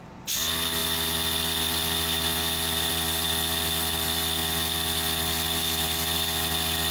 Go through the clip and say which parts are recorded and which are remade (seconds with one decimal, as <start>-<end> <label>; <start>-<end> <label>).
0.0-6.9 recorded